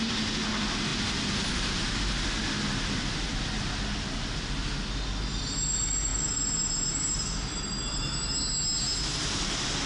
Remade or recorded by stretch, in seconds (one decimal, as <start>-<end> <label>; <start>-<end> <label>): 0.0-9.9 recorded

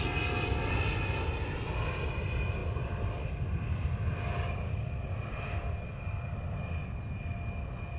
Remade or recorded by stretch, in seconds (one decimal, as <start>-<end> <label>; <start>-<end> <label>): 0.0-8.0 recorded

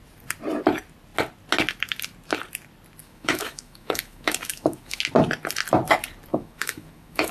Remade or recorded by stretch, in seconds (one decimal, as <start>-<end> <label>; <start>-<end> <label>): 0.0-3.0 recorded; 3.0-5.0 remade; 5.0-6.3 recorded; 6.3-7.3 remade

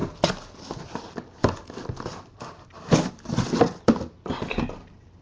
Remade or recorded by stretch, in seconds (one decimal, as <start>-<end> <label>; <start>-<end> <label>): 0.0-5.2 recorded

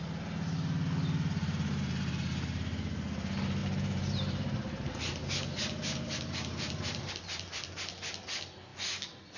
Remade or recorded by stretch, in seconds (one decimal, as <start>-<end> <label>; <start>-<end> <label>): 0.0-1.4 recorded; 1.4-2.6 remade; 2.6-3.6 recorded; 3.6-7.1 remade; 7.1-9.4 recorded

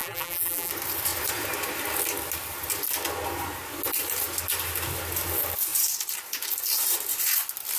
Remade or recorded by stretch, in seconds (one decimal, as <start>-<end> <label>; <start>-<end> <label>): 0.0-0.7 remade; 0.7-7.8 recorded